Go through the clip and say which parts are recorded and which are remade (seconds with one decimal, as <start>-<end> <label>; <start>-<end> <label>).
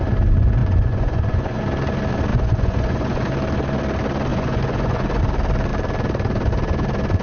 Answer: 0.0-0.6 recorded; 0.6-1.6 remade; 1.6-2.3 recorded; 2.3-3.3 remade; 3.3-4.3 recorded; 4.3-5.2 remade; 5.2-7.2 recorded